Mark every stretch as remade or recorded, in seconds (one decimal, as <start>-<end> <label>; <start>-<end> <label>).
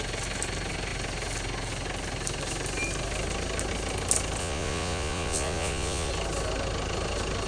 0.0-4.4 recorded; 4.4-6.1 remade; 6.1-7.5 recorded